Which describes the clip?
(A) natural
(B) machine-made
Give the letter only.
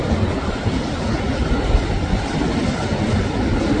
A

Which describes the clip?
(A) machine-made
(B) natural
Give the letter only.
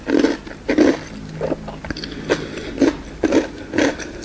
B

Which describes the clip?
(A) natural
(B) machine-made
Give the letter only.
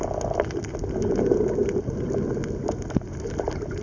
A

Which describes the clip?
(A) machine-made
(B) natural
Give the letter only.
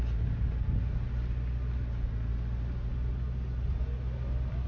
B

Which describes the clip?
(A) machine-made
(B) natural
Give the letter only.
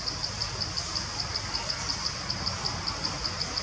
B